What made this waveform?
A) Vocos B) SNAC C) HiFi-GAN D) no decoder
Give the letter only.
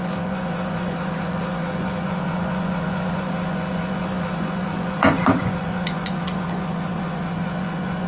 A